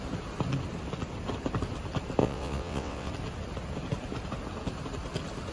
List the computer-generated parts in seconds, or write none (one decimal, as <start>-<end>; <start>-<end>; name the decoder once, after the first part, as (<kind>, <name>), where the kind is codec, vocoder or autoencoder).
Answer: 2.2-3.1 (vocoder, WaveNeXt)